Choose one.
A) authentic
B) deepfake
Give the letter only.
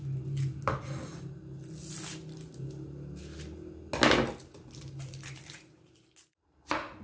A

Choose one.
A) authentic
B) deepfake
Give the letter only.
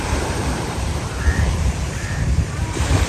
B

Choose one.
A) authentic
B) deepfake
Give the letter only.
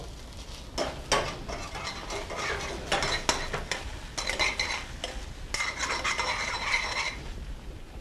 A